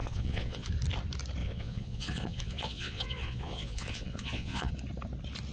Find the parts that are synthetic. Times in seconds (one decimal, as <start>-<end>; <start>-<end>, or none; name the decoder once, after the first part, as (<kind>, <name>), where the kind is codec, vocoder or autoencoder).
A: 0.0-0.7 (vocoder, Vocos); 1.4-4.7